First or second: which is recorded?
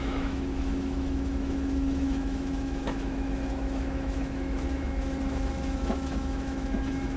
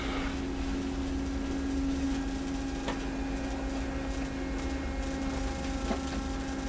second